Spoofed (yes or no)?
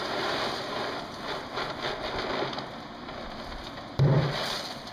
no